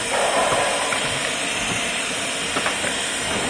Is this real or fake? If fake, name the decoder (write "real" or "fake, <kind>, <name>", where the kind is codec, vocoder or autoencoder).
real